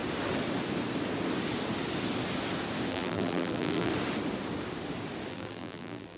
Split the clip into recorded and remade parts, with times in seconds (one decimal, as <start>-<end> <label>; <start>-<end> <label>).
0.0-2.9 recorded; 2.9-3.9 remade; 3.9-5.3 recorded; 5.3-6.2 remade

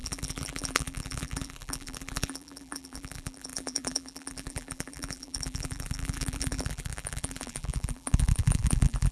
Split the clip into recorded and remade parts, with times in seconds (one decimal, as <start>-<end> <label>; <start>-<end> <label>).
0.0-9.1 remade

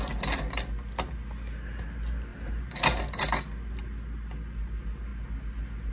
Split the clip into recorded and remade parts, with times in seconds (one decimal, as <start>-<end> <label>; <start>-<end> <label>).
0.0-2.3 recorded; 2.3-3.2 remade; 3.2-5.9 recorded

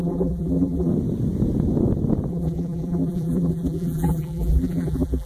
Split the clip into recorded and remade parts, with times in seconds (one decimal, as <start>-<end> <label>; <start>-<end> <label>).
0.0-0.9 remade; 0.9-2.3 recorded; 2.3-5.3 remade